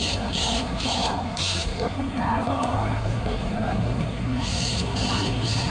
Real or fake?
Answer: fake